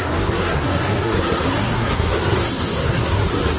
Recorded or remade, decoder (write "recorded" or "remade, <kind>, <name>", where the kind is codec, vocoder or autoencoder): remade, codec, SNAC